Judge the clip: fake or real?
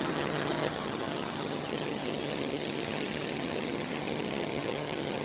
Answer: fake